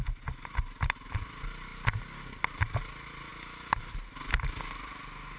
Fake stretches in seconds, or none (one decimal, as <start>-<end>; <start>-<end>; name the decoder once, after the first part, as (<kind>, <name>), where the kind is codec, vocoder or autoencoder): none